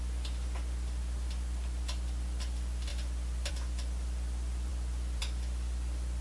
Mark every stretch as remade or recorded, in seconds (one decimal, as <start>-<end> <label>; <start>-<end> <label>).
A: 0.0-6.2 recorded